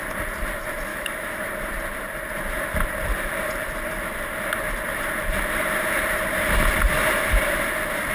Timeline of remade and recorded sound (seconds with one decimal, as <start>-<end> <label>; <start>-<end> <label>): 0.0-0.9 recorded; 0.9-1.5 remade; 1.5-8.1 recorded